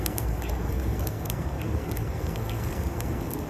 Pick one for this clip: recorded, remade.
remade